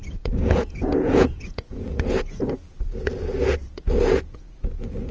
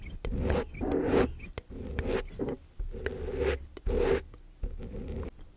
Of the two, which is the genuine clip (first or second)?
second